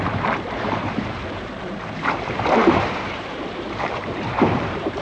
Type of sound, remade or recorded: remade